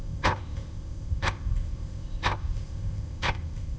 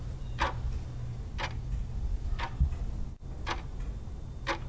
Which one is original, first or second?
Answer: second